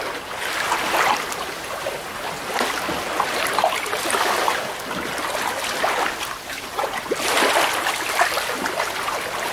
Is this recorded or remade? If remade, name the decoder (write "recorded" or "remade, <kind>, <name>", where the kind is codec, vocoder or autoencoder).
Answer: recorded